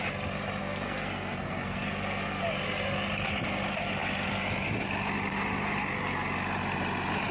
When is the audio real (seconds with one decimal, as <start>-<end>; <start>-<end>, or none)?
0.0-0.6; 2.4-7.3